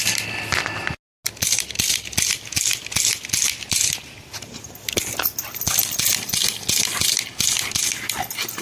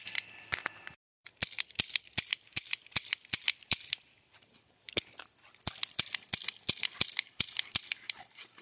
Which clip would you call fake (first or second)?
second